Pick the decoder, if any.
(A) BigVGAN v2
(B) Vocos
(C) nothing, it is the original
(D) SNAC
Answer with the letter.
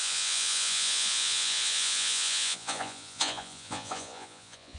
B